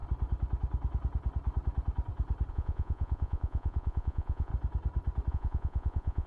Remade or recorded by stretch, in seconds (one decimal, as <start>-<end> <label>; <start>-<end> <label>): 0.0-2.5 recorded; 2.5-4.5 remade; 4.5-5.3 recorded; 5.3-6.3 remade

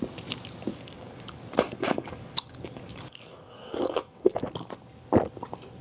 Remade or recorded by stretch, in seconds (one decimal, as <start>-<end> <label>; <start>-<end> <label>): 0.0-0.7 recorded; 0.7-1.4 remade; 1.4-1.8 recorded; 1.8-4.5 remade; 4.5-5.8 recorded

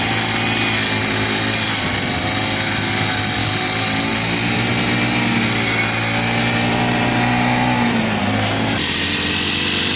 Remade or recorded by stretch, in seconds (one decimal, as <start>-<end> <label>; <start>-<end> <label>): 0.0-3.4 recorded; 3.4-4.1 remade; 4.1-6.4 recorded; 6.4-9.1 remade; 9.1-10.0 recorded

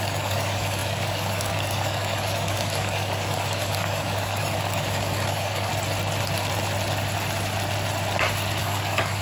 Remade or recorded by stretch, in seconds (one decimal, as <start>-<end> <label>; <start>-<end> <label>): 0.0-5.7 remade; 5.7-8.6 recorded; 8.6-9.2 remade

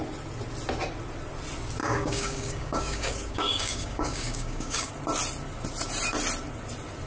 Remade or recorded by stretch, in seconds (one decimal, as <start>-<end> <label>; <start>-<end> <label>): 0.0-1.8 recorded; 1.8-4.9 remade; 4.9-7.1 recorded

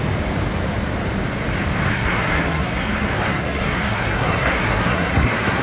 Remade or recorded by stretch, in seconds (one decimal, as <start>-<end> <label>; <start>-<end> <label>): 0.0-1.9 recorded; 1.9-5.6 remade

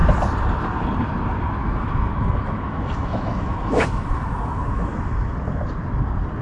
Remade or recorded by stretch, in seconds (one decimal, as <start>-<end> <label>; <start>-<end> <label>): 0.0-1.6 recorded; 1.6-5.4 remade; 5.4-6.4 recorded

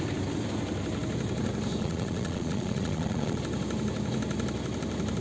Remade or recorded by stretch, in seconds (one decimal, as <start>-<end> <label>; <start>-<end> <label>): 0.0-1.8 recorded; 1.8-3.4 remade; 3.4-5.2 recorded